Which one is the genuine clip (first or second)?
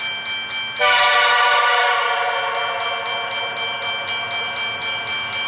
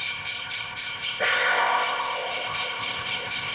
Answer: first